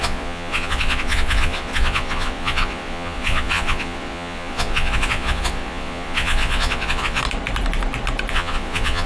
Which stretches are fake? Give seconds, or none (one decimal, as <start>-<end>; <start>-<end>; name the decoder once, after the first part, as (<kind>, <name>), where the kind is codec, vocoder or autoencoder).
0.0-7.2 (vocoder, Vocos); 8.3-9.1